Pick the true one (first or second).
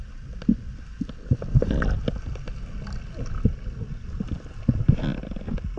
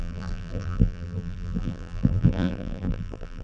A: first